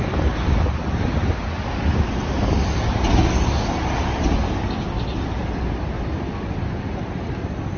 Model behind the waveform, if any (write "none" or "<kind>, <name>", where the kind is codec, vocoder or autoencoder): none